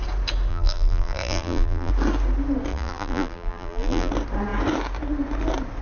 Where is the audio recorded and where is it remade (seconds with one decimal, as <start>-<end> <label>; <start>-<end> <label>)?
0.0-0.5 recorded; 0.5-1.9 remade; 1.9-2.7 recorded; 2.7-4.1 remade; 4.1-5.8 recorded